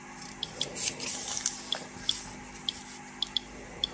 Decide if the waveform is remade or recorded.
recorded